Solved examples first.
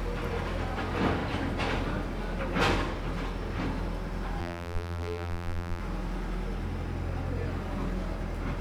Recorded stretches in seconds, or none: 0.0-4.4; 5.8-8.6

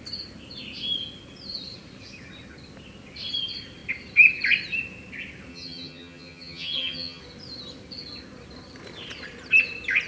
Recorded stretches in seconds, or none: 0.0-5.5; 7.2-10.1

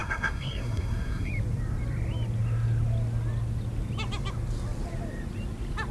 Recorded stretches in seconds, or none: 1.3-5.9

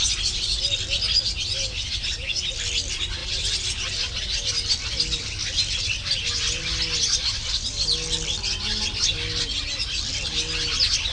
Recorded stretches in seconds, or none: 0.0-11.1

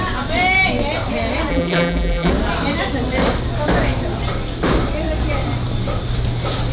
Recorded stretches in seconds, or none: 0.0-1.5; 2.3-6.7